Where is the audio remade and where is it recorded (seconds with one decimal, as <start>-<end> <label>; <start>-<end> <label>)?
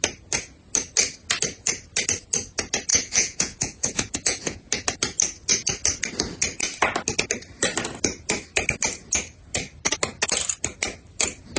0.0-2.9 recorded; 2.9-4.7 remade; 4.7-11.6 recorded